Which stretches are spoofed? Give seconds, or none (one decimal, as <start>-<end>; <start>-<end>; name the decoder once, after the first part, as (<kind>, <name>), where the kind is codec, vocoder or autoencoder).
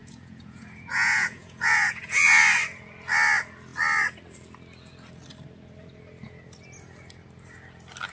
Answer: 0.0-2.2 (vocoder, Vocos)